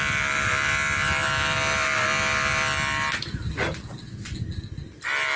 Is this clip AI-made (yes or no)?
no